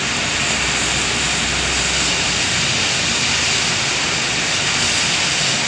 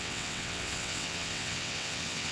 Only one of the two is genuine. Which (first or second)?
first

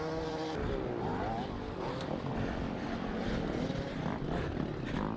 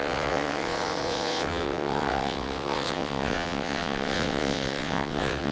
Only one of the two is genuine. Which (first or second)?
first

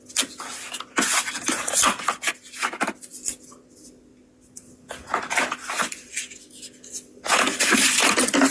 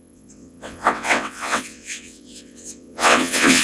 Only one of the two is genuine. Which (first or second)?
first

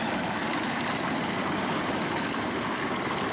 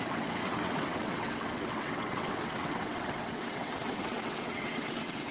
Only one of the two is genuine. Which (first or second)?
first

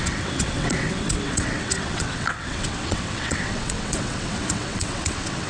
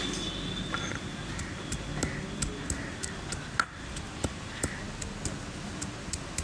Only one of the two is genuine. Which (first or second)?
second